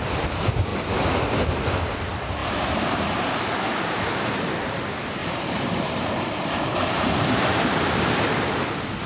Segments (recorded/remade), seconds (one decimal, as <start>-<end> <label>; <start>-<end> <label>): 0.0-5.2 recorded; 5.2-7.7 remade; 7.7-9.1 recorded